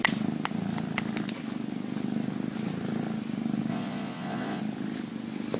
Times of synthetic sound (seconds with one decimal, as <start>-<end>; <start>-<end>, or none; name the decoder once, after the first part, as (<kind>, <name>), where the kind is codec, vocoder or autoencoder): 3.7-4.6 (vocoder, Vocos)